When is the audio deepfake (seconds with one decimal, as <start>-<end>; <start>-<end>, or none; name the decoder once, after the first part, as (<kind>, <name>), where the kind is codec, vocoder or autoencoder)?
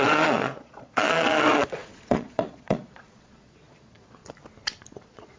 0.0-4.2 (vocoder, Vocos); 4.8-5.4